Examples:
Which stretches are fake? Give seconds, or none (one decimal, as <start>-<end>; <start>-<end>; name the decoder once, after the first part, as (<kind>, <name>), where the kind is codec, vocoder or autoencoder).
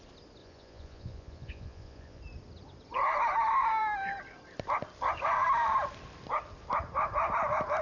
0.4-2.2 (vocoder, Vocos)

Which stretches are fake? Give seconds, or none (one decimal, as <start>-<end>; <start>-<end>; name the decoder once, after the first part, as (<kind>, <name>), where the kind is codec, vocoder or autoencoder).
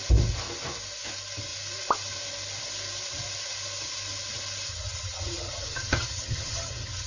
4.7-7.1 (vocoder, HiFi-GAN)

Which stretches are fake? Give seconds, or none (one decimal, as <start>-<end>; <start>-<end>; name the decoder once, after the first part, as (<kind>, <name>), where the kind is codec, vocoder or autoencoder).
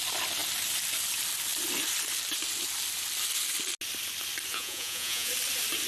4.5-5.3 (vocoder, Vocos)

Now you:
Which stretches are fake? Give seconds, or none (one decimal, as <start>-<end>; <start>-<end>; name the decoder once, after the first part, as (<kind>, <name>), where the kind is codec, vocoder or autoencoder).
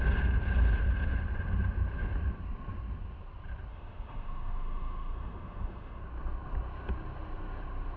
3.7-6.0 (autoencoder, DAC-VAE)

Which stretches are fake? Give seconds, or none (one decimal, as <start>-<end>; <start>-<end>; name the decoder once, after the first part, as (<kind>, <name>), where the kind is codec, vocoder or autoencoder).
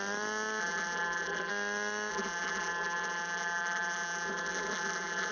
0.6-1.5 (vocoder, BigVGAN v2); 2.1-5.3